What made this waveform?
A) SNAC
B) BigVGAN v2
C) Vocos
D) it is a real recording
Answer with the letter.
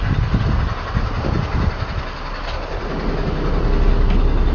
D